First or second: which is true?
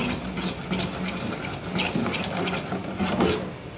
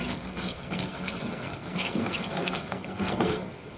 first